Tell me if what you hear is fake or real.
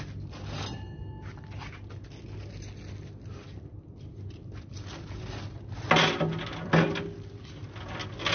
real